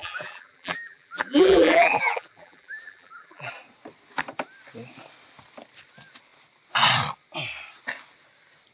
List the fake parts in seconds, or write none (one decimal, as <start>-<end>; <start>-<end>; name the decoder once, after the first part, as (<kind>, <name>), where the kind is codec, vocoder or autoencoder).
0.0-3.5 (vocoder, BigVGAN v2)